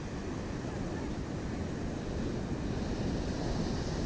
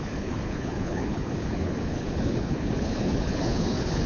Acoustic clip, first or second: first